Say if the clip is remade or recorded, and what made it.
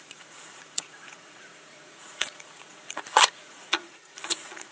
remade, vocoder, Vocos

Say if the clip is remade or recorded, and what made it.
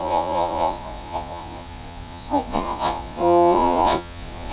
remade, vocoder, Vocos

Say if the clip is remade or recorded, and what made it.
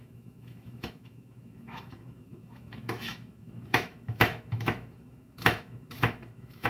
remade, autoencoder, DAC-VAE